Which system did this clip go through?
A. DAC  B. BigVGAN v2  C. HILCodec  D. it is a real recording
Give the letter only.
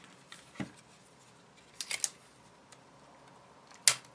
D